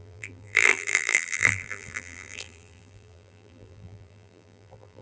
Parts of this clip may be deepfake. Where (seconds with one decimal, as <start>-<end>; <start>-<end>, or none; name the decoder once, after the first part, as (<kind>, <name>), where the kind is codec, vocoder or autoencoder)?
0.0-5.0 (vocoder, BigVGAN v2)